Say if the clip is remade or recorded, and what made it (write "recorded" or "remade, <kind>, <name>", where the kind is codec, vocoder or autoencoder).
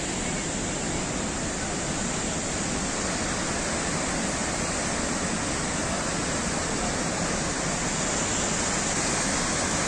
recorded